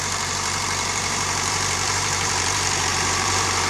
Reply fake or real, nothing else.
fake